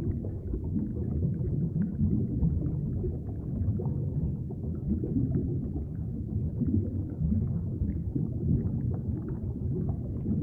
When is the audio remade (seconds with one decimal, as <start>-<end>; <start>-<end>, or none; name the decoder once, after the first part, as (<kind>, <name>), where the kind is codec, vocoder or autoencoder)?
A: 0.0-5.4 (autoencoder, DAC-VAE); 5.9-6.5; 7.2-8.1